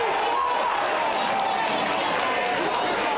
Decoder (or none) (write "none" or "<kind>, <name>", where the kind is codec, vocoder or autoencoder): none